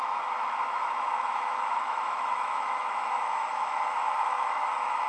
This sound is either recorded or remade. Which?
remade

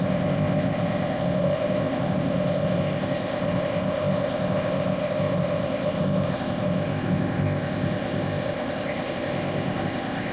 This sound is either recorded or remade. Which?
remade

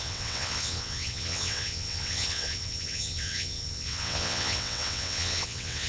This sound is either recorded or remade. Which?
remade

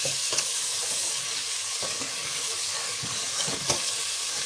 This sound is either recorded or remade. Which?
remade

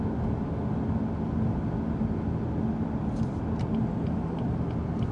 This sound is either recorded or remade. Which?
recorded